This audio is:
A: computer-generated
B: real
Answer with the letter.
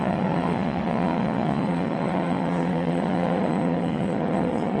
A